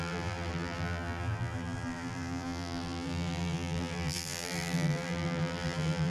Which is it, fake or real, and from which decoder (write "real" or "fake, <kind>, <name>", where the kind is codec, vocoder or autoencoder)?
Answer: fake, vocoder, BigVGAN v2